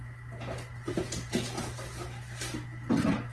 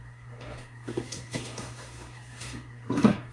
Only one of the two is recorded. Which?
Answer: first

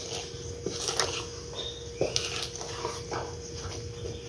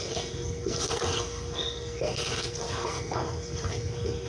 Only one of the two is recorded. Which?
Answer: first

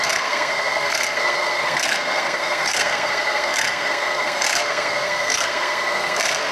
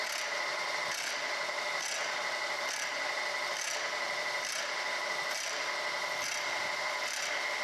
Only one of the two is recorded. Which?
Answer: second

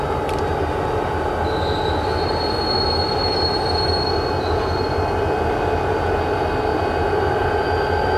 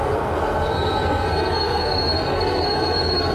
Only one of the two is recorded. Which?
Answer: first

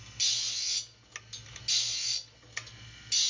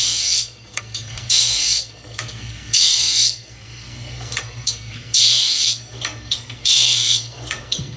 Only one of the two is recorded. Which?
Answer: first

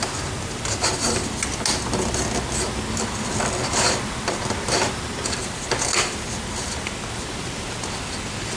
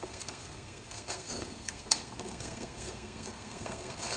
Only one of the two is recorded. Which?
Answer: first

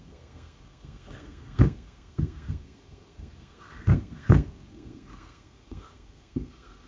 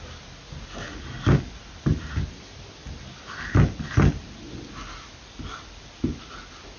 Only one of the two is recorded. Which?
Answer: second